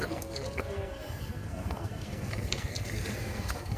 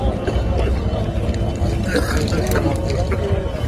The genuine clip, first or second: second